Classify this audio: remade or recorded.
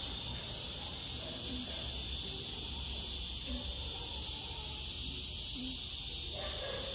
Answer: recorded